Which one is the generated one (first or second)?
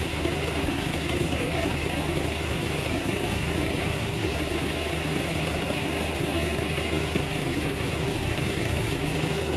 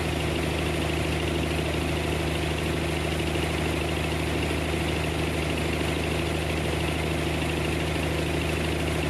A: first